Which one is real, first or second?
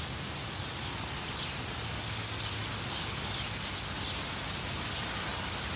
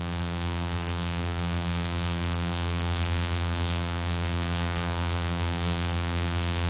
first